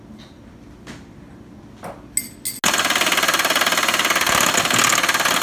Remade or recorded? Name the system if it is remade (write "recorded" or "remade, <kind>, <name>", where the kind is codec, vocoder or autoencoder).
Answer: recorded